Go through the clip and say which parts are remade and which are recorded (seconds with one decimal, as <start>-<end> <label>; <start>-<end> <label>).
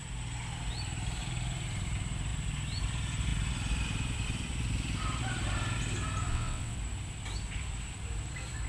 0.0-6.3 recorded; 6.3-6.8 remade; 6.8-8.7 recorded